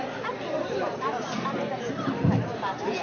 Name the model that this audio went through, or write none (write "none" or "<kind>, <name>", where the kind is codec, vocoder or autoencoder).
vocoder, BigVGAN v2